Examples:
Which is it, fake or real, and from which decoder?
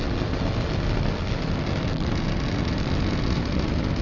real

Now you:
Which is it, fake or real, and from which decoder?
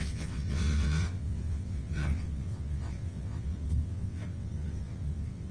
fake, vocoder, WaveNeXt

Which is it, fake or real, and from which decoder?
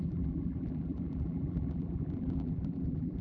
fake, vocoder, BigVGAN v2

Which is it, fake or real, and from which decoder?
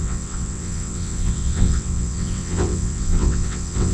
fake, vocoder, WaveNeXt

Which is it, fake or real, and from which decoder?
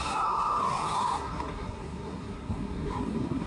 fake, codec, SNAC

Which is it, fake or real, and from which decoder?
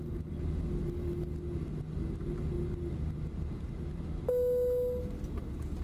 real